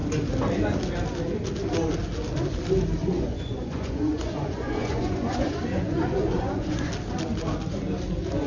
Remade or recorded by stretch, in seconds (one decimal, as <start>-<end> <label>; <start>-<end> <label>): 0.0-3.0 recorded; 3.0-6.9 remade; 6.9-8.5 recorded